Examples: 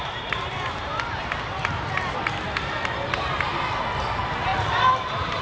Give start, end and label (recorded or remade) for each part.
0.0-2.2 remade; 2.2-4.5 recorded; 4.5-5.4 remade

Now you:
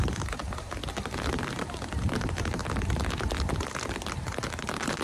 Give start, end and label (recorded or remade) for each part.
0.0-0.8 remade; 0.8-1.6 recorded; 1.6-2.6 remade; 2.6-4.1 recorded; 4.1-5.0 remade

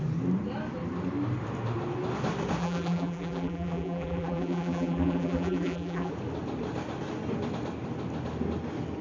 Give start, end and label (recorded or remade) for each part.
0.0-2.6 recorded; 2.6-6.1 remade; 6.1-9.0 recorded

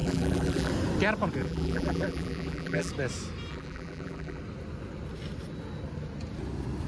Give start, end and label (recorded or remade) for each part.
0.0-0.7 remade; 0.7-1.4 recorded; 1.4-2.9 remade; 2.9-3.5 recorded; 3.5-4.4 remade; 4.4-6.9 recorded

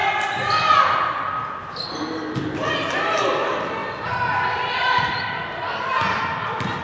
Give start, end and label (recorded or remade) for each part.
0.0-6.8 recorded